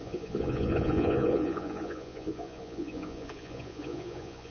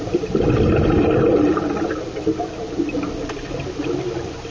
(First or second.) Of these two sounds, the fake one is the first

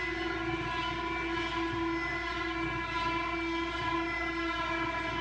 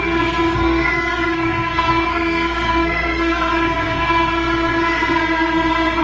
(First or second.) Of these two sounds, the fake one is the second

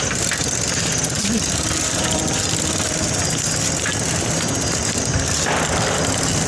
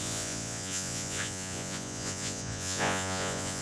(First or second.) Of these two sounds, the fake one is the second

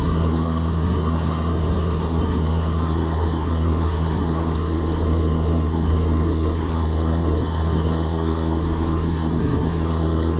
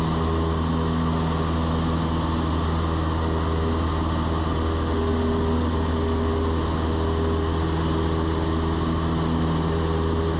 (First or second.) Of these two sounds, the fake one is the first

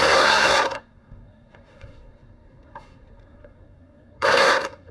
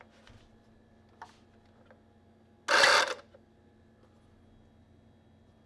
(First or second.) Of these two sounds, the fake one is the first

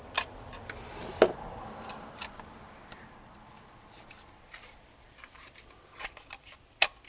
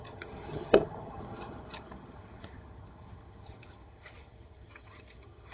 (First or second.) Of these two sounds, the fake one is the second